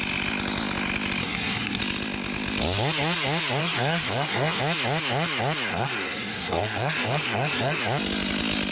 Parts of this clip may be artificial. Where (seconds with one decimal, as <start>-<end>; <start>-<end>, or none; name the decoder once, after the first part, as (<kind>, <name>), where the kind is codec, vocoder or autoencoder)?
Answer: 1.2-1.8 (codec, SNAC); 3.6-4.6; 5.7-7.8